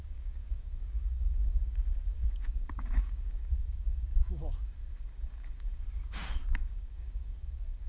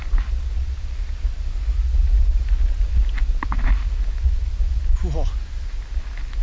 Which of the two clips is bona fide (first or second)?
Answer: second